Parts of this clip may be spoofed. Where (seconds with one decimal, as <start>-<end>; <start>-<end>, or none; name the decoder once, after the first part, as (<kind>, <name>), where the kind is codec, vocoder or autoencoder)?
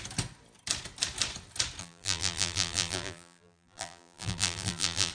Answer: 1.8-5.1 (vocoder, BigVGAN v2)